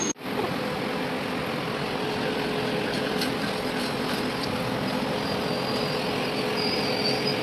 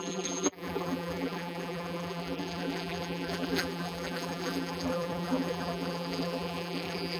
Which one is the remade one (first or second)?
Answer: second